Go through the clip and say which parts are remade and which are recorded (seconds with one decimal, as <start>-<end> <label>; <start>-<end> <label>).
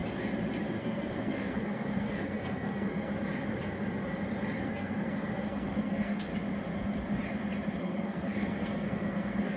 0.0-0.8 recorded; 0.8-3.1 remade; 3.1-4.6 recorded; 4.6-6.3 remade; 6.3-7.8 recorded; 7.8-9.6 remade